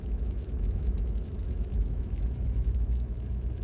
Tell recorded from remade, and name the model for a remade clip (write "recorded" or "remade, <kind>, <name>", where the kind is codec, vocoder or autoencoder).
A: remade, autoencoder, DAC-VAE